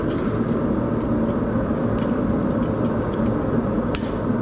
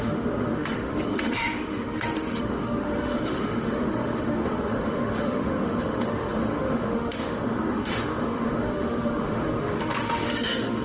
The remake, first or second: second